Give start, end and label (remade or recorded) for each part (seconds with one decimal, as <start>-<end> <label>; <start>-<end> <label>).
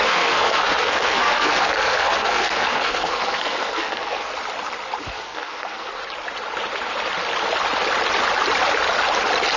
0.0-4.3 remade; 4.3-5.0 recorded; 5.0-6.0 remade; 6.0-9.6 recorded